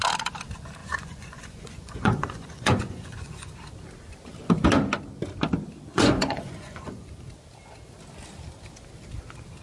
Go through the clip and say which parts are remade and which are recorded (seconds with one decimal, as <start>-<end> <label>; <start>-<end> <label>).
0.0-0.8 recorded; 0.8-3.5 remade; 3.5-5.9 recorded; 5.9-7.1 remade; 7.1-9.6 recorded